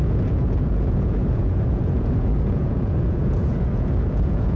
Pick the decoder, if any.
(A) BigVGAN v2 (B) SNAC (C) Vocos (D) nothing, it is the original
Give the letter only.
C